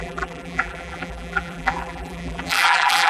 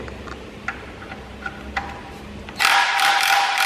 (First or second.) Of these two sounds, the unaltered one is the second